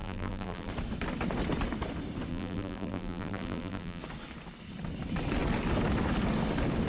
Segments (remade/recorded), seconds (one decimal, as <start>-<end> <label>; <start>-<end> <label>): 0.0-0.7 remade; 0.7-2.3 recorded; 2.3-4.0 remade; 4.0-6.9 recorded

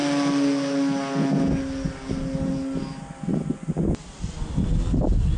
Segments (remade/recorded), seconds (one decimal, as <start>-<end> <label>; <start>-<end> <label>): 0.0-5.4 recorded

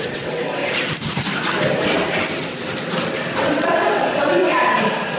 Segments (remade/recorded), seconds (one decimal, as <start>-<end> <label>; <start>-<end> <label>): 0.0-0.6 remade; 0.6-3.4 recorded; 3.4-4.4 remade; 4.4-5.2 recorded

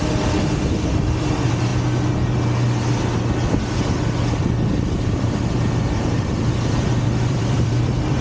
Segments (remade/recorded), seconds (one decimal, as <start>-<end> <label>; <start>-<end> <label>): 0.0-1.7 remade; 1.7-6.0 recorded; 6.0-8.2 remade